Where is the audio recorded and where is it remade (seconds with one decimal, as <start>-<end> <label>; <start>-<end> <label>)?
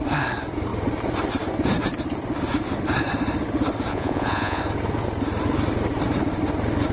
0.0-3.9 recorded; 3.9-4.6 remade; 4.6-6.9 recorded